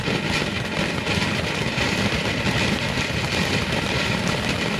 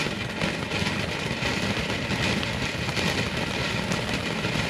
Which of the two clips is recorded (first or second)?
second